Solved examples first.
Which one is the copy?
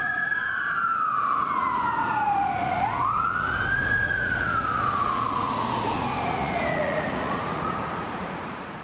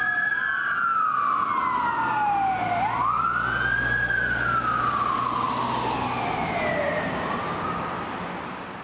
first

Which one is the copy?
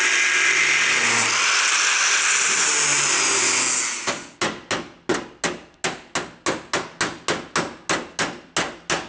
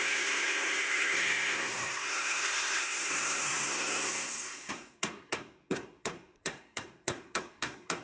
second